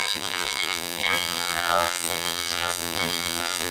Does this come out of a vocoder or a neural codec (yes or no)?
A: yes